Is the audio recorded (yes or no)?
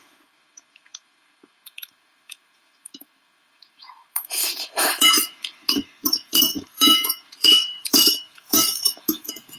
no